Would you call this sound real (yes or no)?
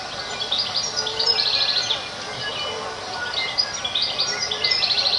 yes